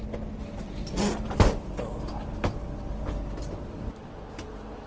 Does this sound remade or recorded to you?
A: recorded